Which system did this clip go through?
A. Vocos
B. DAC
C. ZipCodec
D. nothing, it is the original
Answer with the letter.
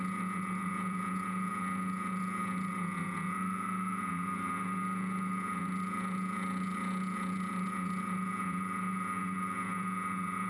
A